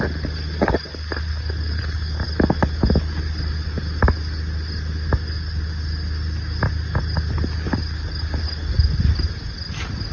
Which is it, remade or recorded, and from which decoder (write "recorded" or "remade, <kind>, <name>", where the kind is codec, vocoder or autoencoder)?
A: recorded